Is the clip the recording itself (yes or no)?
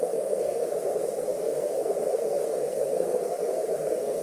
no